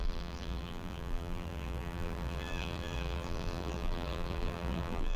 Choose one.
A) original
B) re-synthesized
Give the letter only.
B